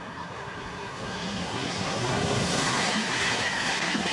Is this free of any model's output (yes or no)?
no